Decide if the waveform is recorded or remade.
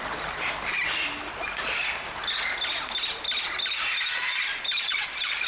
recorded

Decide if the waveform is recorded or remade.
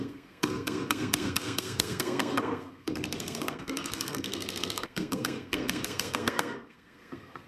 remade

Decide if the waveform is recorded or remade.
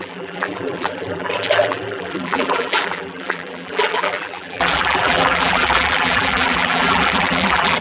remade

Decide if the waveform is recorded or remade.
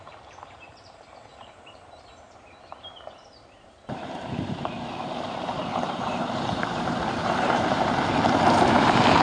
remade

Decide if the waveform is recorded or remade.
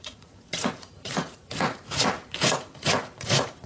remade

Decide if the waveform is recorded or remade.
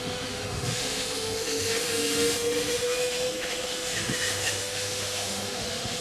remade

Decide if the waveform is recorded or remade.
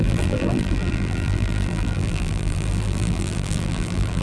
remade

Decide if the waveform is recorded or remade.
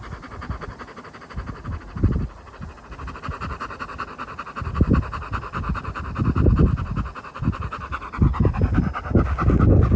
recorded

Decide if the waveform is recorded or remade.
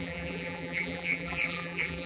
remade